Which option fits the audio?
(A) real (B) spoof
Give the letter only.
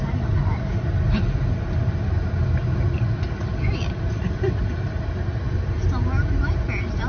A